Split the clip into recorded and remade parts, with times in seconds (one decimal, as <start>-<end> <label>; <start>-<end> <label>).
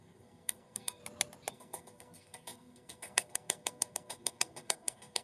0.0-1.0 remade; 1.0-1.5 recorded; 1.5-5.2 remade